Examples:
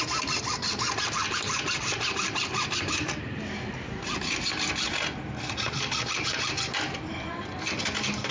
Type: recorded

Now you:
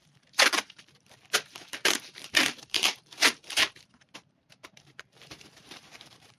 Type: remade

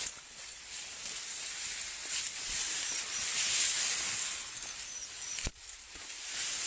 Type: recorded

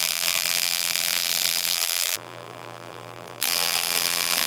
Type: remade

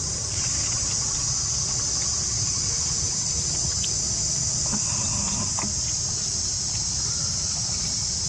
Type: recorded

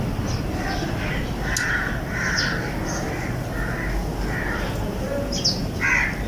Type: recorded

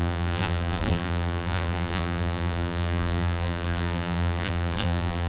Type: remade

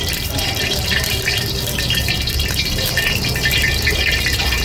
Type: remade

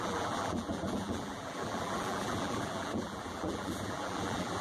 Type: remade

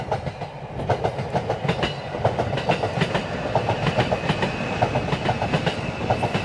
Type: recorded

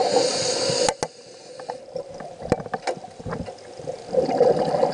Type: recorded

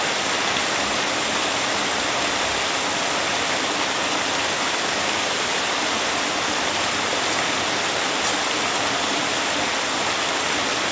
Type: recorded